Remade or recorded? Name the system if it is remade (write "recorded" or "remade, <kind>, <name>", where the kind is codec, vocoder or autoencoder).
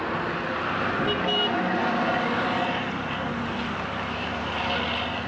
recorded